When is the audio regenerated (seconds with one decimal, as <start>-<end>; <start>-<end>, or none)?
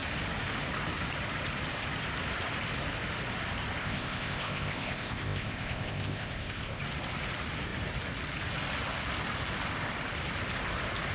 3.8-6.8